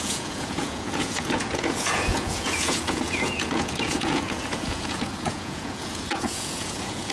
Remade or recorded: remade